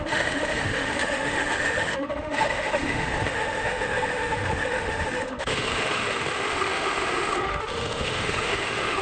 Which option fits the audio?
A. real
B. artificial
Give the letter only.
B